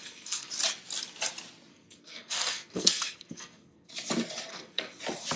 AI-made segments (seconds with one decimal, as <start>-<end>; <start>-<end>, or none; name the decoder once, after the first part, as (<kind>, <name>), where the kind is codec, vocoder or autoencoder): 0.0-0.5 (codec, SNAC); 1.7-3.9; 4.5-5.0